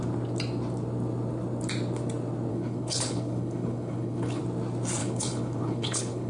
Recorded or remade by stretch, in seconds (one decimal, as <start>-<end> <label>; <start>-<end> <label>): 0.0-2.5 recorded; 2.5-4.4 remade; 4.4-5.0 recorded; 5.0-6.3 remade